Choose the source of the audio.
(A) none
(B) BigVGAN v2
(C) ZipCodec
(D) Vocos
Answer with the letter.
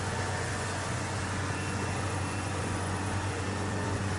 D